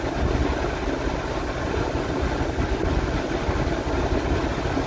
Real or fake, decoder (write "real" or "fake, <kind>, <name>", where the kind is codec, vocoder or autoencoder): real